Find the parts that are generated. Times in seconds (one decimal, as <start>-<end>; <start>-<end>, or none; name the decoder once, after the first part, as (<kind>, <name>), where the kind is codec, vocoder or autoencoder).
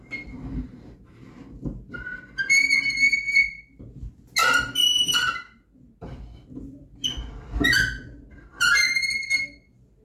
none